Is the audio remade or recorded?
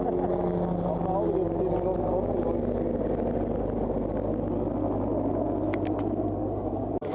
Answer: recorded